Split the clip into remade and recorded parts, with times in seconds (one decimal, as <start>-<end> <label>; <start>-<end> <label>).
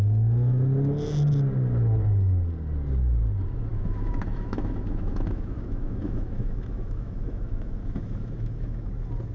0.0-3.7 recorded; 3.7-8.9 remade; 8.9-9.3 recorded